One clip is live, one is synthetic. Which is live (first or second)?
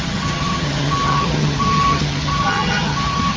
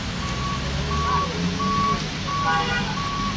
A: second